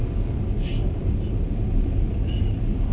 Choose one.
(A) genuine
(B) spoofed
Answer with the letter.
A